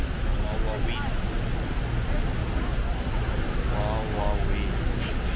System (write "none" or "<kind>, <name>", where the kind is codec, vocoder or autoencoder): none